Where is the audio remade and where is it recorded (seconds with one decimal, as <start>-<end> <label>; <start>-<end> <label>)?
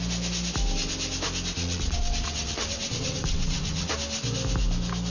0.0-1.6 recorded; 1.6-3.9 remade; 3.9-5.1 recorded